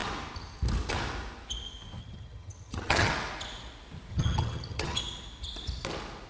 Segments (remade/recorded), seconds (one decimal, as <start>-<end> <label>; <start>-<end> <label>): 0.0-2.0 recorded; 2.0-3.1 remade; 3.1-4.1 recorded; 4.1-5.0 remade; 5.0-6.3 recorded